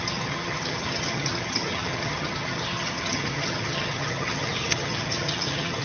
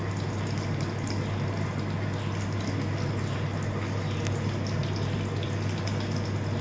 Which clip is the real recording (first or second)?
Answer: second